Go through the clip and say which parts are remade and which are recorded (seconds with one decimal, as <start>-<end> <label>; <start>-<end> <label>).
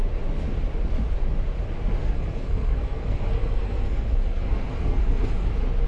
0.0-2.0 recorded; 2.0-5.5 remade; 5.5-5.9 recorded